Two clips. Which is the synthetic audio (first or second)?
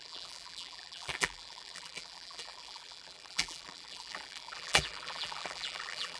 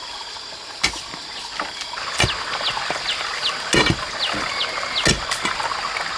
first